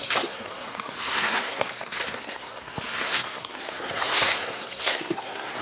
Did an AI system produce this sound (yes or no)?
yes